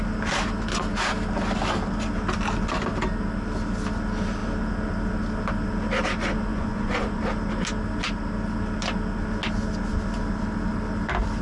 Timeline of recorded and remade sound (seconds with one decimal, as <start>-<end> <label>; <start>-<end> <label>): 0.0-6.5 recorded; 6.5-7.2 remade; 7.2-11.4 recorded